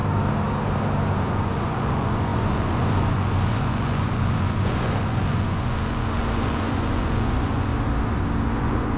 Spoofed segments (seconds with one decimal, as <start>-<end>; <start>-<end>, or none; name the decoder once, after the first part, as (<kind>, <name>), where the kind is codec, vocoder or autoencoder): 1.3-7.7 (vocoder, Vocos); 8.6-9.0